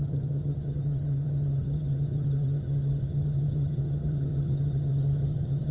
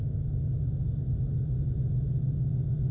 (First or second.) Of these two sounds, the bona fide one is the second